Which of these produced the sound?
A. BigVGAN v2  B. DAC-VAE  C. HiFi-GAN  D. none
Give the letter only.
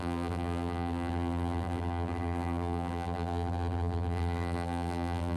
A